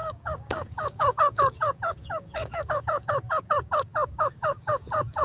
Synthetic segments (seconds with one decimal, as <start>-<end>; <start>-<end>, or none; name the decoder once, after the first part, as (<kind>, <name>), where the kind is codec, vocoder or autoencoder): 0.0-5.2 (codec, DAC)